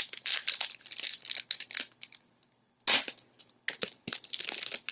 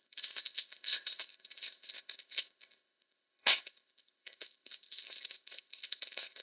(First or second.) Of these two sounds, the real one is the first